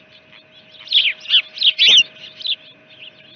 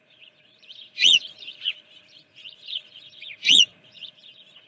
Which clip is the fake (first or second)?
second